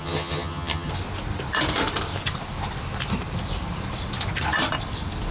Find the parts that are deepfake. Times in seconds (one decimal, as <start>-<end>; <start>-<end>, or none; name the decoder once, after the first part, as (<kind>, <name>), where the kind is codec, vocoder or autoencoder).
0.0-0.9 (vocoder, HiFi-GAN)